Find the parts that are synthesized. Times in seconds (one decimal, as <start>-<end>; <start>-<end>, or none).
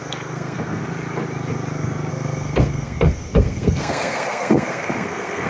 0.0-0.8; 2.1-5.5